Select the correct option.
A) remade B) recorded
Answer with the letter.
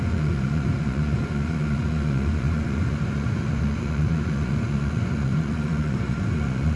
A